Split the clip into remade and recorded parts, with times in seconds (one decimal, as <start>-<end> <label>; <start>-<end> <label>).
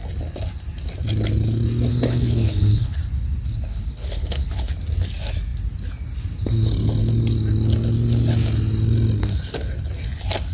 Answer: 0.0-1.9 recorded; 1.9-3.0 remade; 3.0-3.7 recorded; 3.7-4.7 remade; 4.7-10.5 recorded